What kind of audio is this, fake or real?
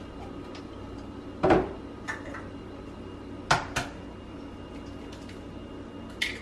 real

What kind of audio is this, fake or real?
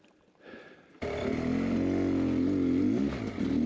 real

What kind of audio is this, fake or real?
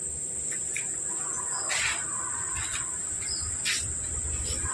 real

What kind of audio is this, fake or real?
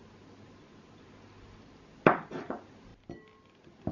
real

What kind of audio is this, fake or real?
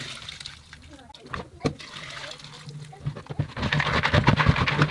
real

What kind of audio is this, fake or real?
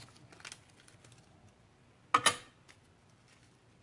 real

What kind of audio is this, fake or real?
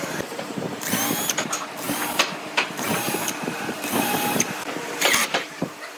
fake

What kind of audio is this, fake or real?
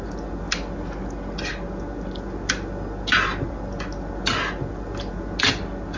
real